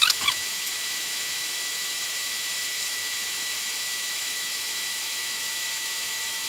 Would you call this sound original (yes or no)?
no